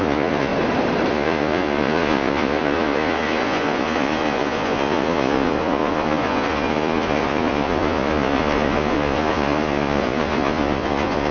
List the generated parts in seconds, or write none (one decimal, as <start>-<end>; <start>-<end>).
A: 0.0-0.5; 1.1-11.3